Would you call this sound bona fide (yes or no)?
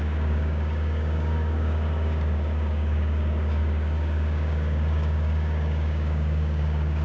no